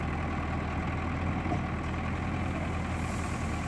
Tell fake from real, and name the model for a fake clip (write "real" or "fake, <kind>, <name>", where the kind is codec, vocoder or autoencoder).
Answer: real